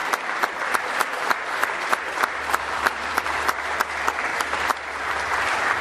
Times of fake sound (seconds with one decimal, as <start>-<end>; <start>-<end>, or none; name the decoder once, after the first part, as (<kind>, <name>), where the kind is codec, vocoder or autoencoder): 0.0-0.8 (vocoder, BigVGAN v2); 1.6-3.9; 4.3-5.0